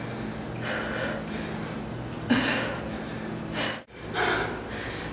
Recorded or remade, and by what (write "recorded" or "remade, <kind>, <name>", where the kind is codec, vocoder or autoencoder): recorded